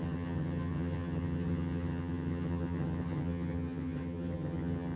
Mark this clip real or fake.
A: fake